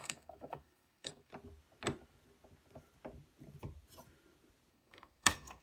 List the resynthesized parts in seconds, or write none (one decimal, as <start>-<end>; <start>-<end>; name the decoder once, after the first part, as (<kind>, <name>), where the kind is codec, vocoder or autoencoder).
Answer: 0.0-1.3 (codec, SNAC); 4.7-5.6